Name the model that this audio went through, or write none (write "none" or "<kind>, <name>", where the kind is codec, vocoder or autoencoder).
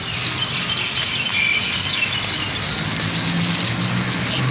none